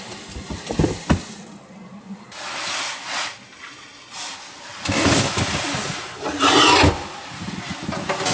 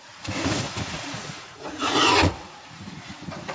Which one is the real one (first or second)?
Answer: first